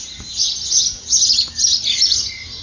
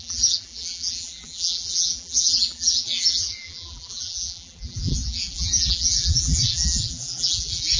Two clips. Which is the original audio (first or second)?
first